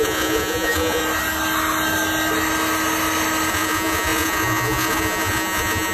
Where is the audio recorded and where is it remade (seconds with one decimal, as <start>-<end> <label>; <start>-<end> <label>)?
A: 0.0-1.0 remade; 1.0-3.5 recorded; 3.5-5.9 remade